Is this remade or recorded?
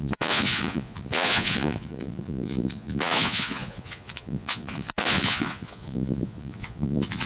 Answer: remade